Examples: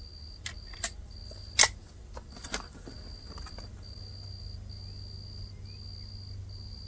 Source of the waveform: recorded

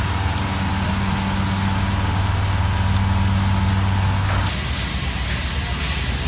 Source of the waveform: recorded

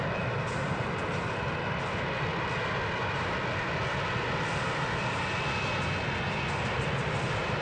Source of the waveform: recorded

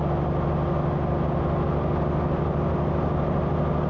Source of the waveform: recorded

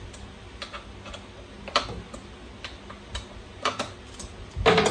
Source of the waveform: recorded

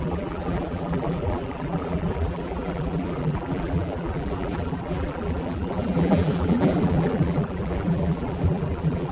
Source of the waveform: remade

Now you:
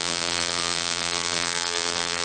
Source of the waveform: remade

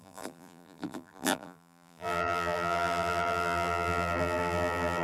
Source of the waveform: remade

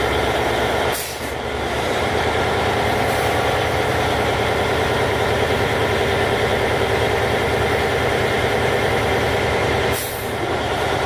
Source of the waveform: remade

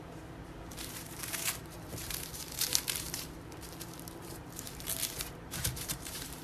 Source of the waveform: remade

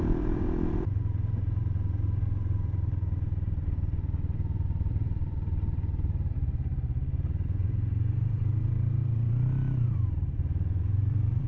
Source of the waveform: remade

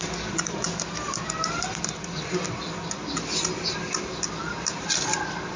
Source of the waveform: remade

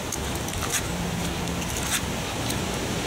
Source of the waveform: recorded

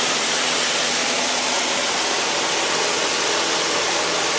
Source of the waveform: remade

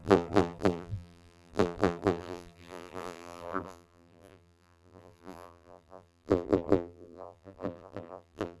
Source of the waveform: remade